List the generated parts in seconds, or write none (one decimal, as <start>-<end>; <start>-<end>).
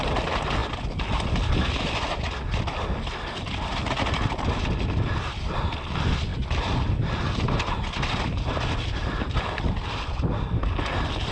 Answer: none